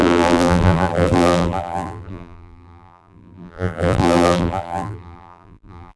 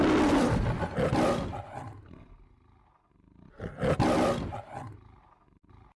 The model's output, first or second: first